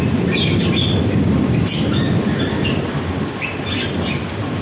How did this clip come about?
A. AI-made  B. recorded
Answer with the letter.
B